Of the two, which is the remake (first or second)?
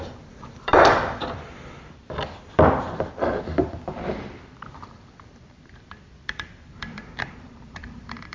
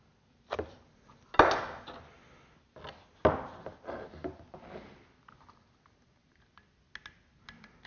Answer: first